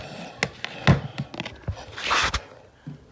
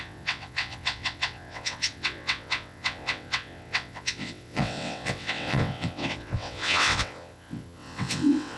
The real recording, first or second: first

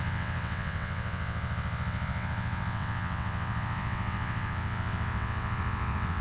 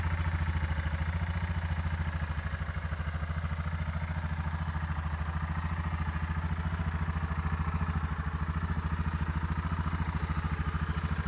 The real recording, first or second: second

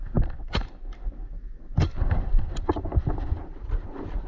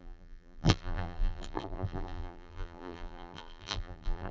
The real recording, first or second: first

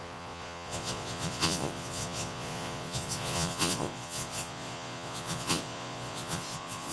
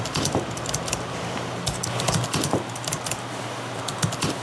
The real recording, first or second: second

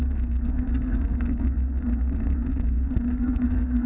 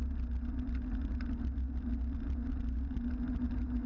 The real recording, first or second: second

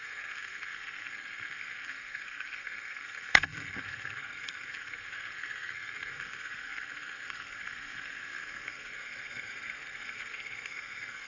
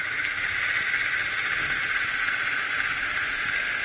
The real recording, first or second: second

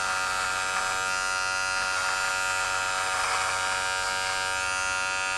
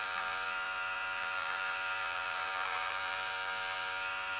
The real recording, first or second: first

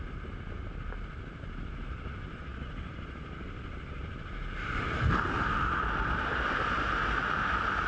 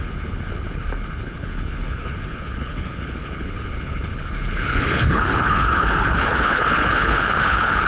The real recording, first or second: first